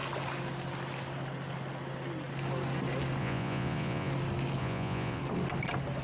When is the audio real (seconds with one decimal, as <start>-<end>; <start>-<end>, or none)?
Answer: 0.0-3.2; 4.1-4.6; 5.2-6.0